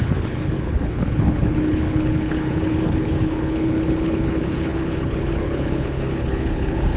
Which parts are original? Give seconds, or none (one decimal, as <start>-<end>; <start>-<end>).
none